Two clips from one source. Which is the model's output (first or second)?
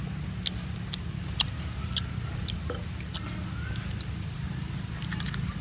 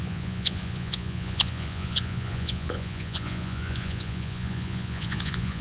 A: second